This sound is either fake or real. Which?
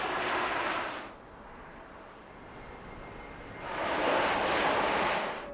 real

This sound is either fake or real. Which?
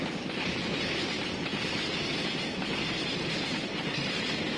real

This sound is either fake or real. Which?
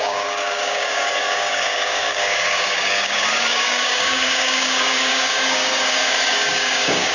fake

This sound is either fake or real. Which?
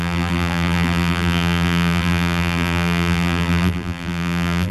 fake